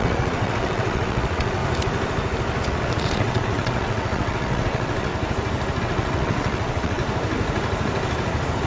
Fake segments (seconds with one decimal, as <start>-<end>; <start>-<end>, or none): 0.0-1.6; 2.6-5.1; 5.8-7.0